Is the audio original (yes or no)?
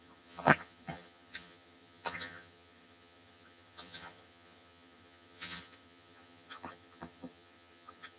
no